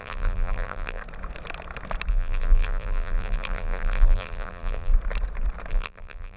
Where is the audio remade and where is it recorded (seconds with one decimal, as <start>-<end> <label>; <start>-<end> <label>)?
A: 0.0-1.0 remade; 1.0-2.1 recorded; 2.1-4.9 remade; 4.9-5.7 recorded; 5.7-6.4 remade